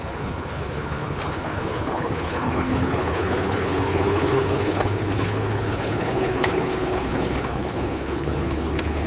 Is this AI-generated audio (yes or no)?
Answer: yes